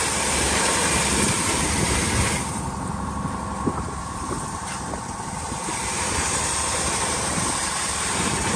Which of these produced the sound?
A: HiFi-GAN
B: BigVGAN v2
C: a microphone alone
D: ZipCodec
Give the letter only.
B